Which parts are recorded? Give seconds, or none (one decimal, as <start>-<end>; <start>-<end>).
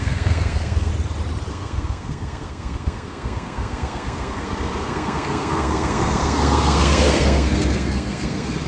0.9-1.5